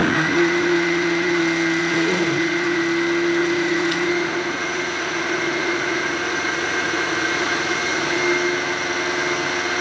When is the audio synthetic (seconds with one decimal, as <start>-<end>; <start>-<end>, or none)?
0.0-1.4; 1.8-2.8; 3.4-8.2